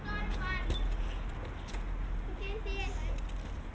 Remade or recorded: recorded